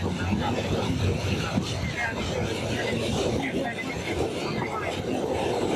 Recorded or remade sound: recorded